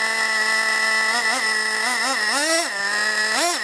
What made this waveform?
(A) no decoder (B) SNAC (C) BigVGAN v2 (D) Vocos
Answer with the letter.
A